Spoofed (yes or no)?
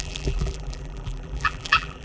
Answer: yes